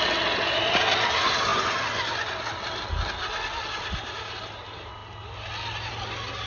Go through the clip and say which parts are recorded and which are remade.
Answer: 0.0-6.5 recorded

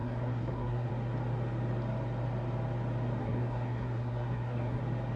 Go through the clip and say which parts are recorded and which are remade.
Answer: 0.0-0.9 remade; 0.9-3.2 recorded; 3.2-4.8 remade; 4.8-5.2 recorded

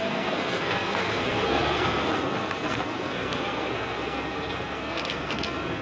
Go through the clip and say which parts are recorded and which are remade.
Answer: 0.0-5.8 remade